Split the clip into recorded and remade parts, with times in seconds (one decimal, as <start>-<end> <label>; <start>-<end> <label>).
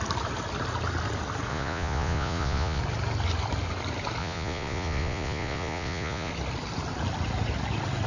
0.0-1.5 recorded; 1.5-2.8 remade; 2.8-4.2 recorded; 4.2-6.3 remade; 6.3-8.1 recorded